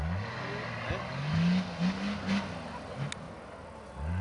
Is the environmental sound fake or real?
real